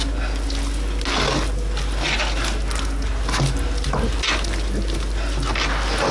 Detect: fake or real real